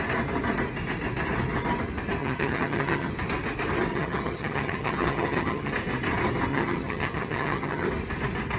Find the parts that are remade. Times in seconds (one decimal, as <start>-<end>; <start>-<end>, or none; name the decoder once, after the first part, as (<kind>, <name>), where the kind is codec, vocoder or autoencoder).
2.2-3.1 (vocoder, HiFi-GAN); 3.9-5.7; 6.5-7.9